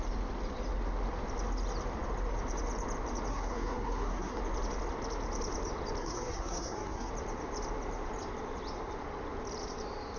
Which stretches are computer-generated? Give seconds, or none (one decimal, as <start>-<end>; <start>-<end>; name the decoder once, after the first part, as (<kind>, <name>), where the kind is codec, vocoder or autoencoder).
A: 3.3-4.4 (codec, SNAC); 6.0-7.1